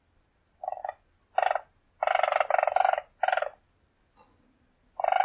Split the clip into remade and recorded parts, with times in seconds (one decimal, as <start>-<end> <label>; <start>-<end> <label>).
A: 0.0-5.2 recorded